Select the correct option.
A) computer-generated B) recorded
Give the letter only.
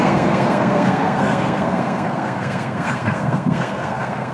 A